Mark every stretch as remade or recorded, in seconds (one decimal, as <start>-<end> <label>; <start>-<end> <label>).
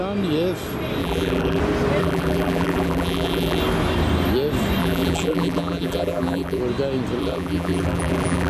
0.0-1.0 recorded; 1.0-1.6 remade; 1.6-2.0 recorded; 2.0-3.6 remade; 3.6-4.8 recorded; 4.8-6.6 remade; 6.6-7.2 recorded; 7.2-8.5 remade